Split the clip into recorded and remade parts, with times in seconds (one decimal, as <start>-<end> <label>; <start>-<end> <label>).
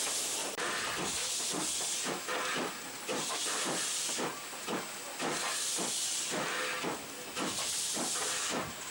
0.0-0.4 recorded; 0.4-1.0 remade; 1.0-8.9 recorded